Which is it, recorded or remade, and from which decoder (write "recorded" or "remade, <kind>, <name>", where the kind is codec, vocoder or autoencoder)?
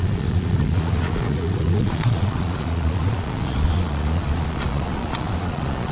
remade, vocoder, Vocos